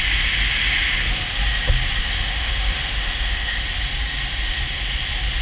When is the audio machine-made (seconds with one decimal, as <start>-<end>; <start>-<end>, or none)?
2.0-3.6

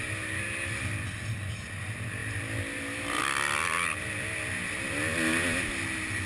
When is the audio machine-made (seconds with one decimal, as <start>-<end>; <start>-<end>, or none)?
none

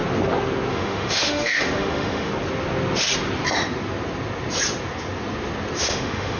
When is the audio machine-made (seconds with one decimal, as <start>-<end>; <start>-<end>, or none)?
0.7-2.3; 5.8-6.4

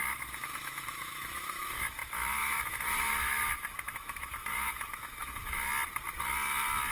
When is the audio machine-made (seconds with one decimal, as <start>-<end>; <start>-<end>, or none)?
0.0-5.6

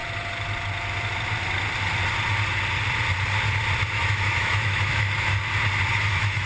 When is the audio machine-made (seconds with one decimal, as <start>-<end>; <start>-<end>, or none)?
3.9-5.4; 5.9-6.5